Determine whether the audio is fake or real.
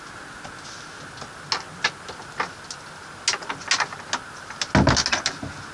real